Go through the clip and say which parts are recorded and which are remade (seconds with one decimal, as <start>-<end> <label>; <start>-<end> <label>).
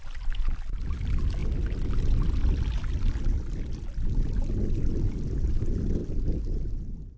0.0-7.2 recorded